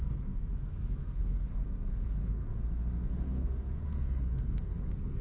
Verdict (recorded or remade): remade